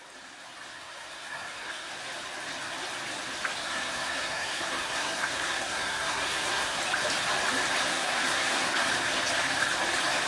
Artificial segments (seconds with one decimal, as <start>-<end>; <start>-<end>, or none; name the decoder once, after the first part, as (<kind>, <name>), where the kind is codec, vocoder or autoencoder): 0.7-1.9 (codec, SNAC); 3.6-6.8; 7.9-8.9